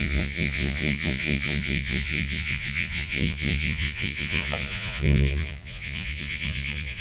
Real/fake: fake